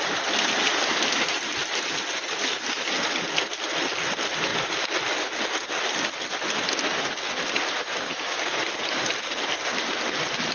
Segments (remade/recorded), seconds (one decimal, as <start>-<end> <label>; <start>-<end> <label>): 0.0-7.9 recorded; 7.9-8.6 remade; 8.6-10.5 recorded